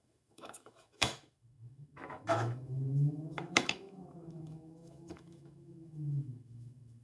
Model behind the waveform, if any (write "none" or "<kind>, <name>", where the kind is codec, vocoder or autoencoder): autoencoder, DAC-VAE